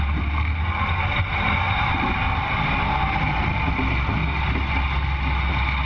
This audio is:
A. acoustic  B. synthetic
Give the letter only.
A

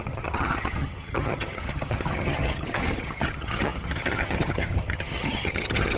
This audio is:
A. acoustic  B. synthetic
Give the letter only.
B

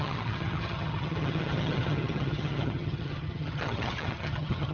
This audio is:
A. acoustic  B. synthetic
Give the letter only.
B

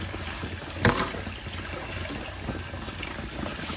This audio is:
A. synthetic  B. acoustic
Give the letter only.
B